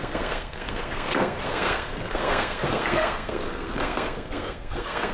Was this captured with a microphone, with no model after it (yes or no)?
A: no